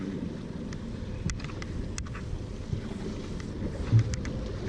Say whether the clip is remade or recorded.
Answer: recorded